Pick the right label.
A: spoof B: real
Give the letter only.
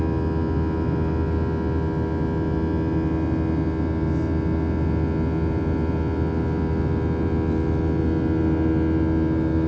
B